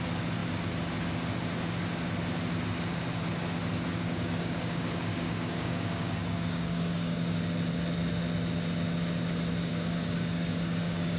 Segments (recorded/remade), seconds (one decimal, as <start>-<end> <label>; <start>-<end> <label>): 0.0-3.9 recorded; 3.9-7.4 remade; 7.4-9.7 recorded; 9.7-11.2 remade